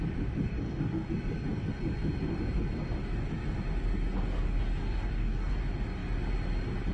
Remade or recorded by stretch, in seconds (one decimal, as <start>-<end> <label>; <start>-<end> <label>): 0.0-0.5 recorded; 0.5-1.1 remade; 1.1-4.8 recorded; 4.8-5.5 remade; 5.5-6.9 recorded